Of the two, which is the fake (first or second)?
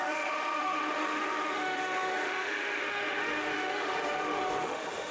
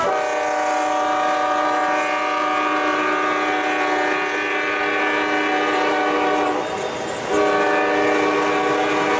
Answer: first